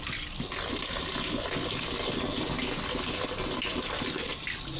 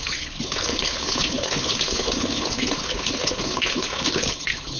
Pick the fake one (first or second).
second